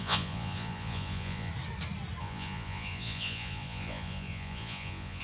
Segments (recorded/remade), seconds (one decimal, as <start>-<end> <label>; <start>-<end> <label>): 0.0-1.5 remade; 1.5-2.2 recorded; 2.2-5.2 remade